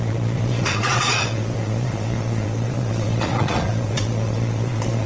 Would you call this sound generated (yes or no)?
yes